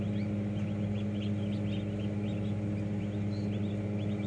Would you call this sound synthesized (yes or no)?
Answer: no